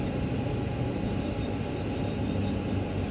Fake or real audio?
real